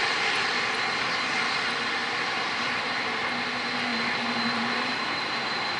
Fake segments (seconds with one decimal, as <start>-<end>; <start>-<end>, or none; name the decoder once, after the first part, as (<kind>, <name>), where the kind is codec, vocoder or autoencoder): 2.0-2.8 (vocoder, BigVGAN v2); 3.9-4.7